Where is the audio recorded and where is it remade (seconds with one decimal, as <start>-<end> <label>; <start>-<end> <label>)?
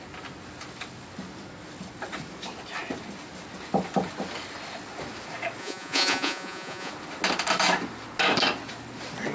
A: 0.0-5.6 recorded; 5.6-6.9 remade; 6.9-9.3 recorded